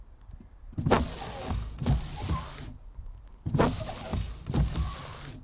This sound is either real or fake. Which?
real